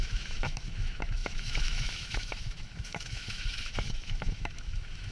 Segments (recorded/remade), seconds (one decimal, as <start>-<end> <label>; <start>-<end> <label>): 0.0-5.1 remade